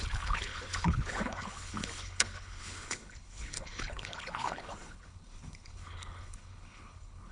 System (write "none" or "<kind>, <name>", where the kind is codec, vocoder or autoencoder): codec, HILCodec